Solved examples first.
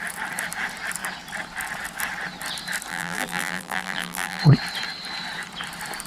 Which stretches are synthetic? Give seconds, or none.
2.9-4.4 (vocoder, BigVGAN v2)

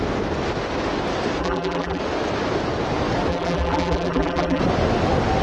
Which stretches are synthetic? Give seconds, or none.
1.4-2.0 (vocoder, BigVGAN v2); 3.3-4.6

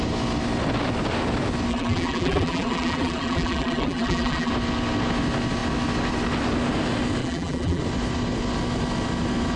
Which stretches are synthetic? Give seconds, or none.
1.7-4.5 (vocoder, BigVGAN v2); 7.2-7.8

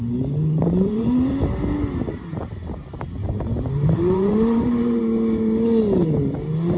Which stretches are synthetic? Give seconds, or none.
0.6-1.3 (vocoder, BigVGAN v2); 2.3-5.0

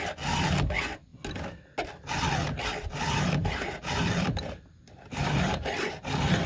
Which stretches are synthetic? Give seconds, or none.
3.4-5.9 (vocoder, BigVGAN v2)

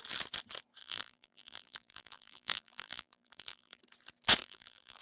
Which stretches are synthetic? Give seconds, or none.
0.8-3.8 (vocoder, BigVGAN v2); 4.4-5.0

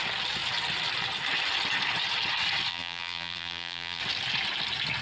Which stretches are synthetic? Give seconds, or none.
2.7-4.0 (vocoder, BigVGAN v2)